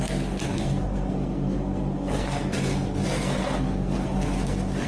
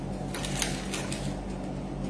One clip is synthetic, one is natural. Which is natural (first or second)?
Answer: second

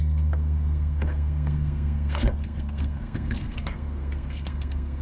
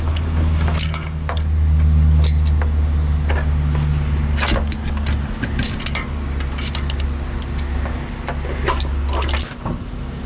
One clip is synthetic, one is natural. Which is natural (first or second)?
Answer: second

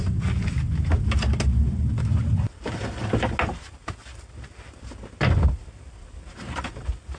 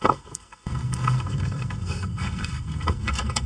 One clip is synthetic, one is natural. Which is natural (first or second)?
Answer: first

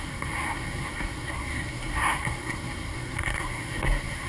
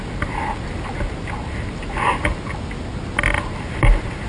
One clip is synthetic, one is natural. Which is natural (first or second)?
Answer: second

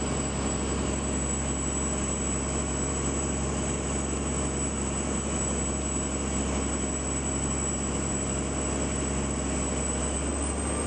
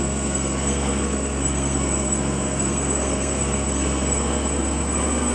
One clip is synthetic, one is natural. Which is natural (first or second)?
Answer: first